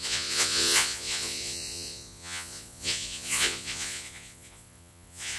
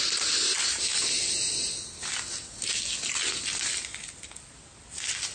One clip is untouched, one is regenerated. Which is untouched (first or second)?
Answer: second